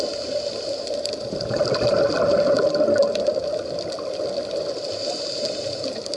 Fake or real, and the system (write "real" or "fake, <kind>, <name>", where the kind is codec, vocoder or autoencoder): real